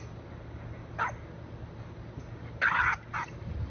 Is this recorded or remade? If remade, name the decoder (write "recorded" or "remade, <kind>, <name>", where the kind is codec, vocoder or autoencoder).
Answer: recorded